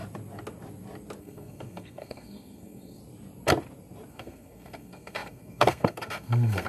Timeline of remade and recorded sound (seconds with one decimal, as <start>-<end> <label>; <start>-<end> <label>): 0.0-1.2 recorded; 1.2-3.0 remade; 3.0-4.1 recorded; 4.1-6.7 remade